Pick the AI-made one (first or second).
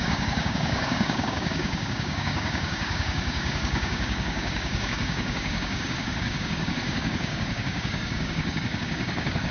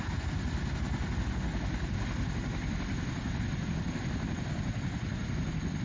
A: first